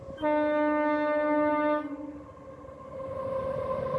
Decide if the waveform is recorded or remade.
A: recorded